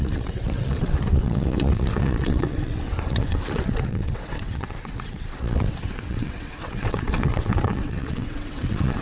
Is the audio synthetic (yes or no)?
yes